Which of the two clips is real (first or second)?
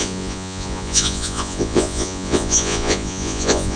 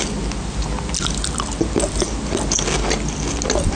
second